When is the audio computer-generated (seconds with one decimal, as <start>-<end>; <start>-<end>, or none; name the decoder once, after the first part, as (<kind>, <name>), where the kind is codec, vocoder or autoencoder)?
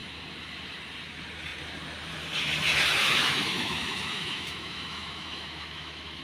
3.0-6.2 (autoencoder, DAC-VAE)